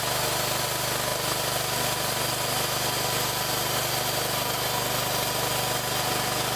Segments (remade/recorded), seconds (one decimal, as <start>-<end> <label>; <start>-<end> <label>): 0.0-6.6 recorded